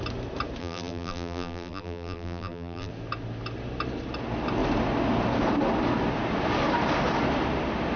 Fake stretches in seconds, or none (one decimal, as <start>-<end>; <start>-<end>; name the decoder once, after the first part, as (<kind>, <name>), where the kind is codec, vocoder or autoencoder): 0.6-2.9 (vocoder, BigVGAN v2)